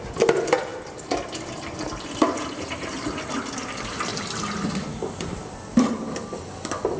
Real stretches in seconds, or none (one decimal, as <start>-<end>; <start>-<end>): 0.0-0.7; 3.4-4.1; 4.7-7.0

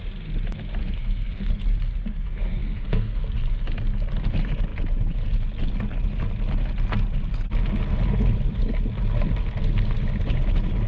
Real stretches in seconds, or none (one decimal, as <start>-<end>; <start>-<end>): 0.0-0.8; 1.5-2.6; 3.2-10.9